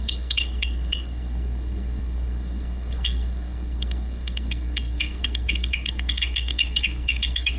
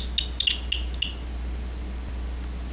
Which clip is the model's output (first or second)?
first